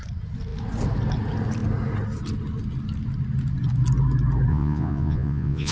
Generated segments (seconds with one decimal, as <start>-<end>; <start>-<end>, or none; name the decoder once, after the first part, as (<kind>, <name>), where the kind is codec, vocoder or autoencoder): 4.5-5.7 (vocoder, Vocos)